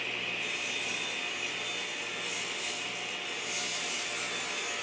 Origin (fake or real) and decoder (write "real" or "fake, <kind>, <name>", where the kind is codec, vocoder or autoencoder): real